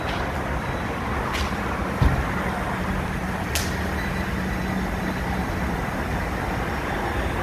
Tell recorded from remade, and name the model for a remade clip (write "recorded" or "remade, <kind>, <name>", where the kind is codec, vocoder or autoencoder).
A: recorded